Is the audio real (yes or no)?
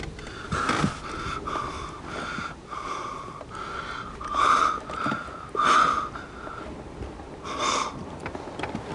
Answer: yes